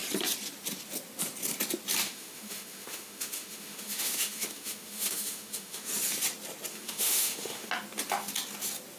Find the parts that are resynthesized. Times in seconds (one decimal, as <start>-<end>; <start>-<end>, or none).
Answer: 2.0-5.9; 6.7-7.7